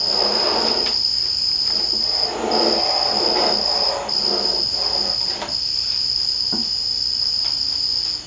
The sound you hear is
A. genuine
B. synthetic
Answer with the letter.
A